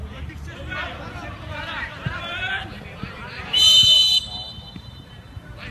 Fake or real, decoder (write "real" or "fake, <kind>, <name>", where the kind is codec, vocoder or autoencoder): fake, vocoder, BigVGAN v2